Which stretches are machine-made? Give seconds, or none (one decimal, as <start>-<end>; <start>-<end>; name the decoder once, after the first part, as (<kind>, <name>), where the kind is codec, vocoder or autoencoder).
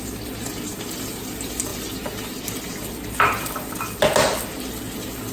none